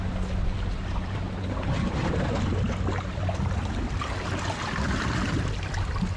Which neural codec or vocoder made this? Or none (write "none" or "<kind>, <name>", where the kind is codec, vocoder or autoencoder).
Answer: none